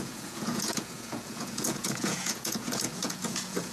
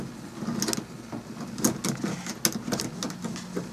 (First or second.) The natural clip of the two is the second